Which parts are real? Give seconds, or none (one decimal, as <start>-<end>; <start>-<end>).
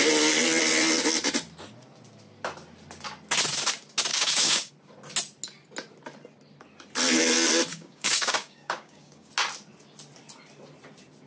0.0-4.1; 4.7-7.7; 9.3-11.3